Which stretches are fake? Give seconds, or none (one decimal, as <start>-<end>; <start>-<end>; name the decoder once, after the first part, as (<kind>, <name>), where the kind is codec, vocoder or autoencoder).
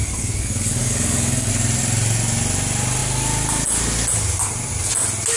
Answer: 0.0-1.5 (codec, DAC)